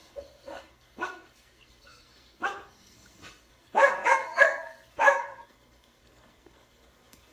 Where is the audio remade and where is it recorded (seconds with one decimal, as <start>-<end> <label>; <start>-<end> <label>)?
0.0-7.3 remade